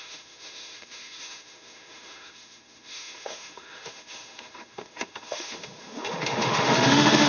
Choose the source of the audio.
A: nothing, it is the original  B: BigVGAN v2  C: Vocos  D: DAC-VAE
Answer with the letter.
D